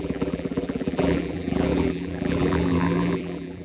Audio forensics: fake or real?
fake